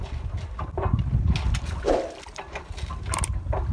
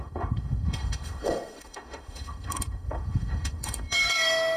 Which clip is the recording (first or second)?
first